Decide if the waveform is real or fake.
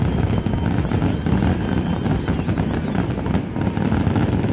real